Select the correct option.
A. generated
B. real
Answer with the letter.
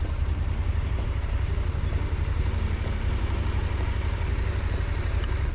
A